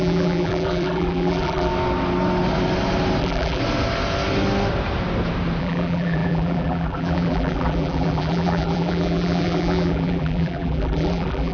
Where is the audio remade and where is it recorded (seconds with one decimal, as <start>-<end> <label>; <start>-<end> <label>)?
0.0-1.7 remade; 1.7-3.2 recorded; 3.2-3.6 remade; 3.6-5.6 recorded; 5.6-11.5 remade